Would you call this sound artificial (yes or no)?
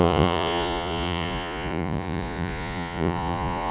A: yes